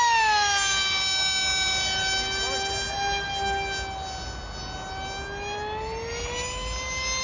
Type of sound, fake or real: real